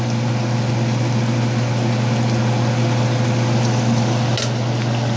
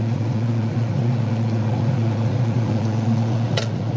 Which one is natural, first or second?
first